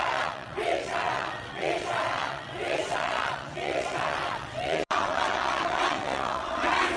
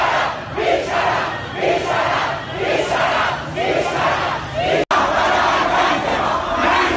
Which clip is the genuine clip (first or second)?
second